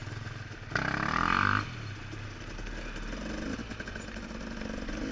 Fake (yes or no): no